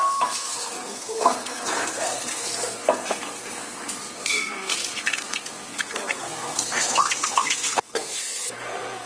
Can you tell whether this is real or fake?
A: fake